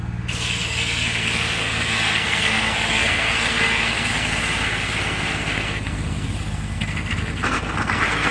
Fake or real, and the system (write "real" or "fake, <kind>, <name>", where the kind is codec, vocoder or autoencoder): fake, codec, SNAC